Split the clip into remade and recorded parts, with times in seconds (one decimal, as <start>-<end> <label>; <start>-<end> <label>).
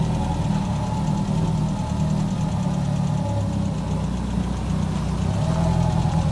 0.0-6.3 recorded